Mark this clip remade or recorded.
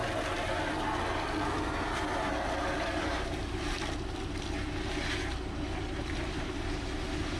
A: recorded